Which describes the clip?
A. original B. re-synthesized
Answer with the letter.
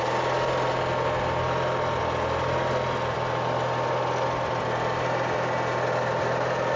A